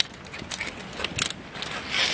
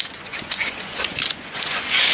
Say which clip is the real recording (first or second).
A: first